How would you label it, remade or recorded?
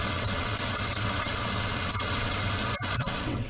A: remade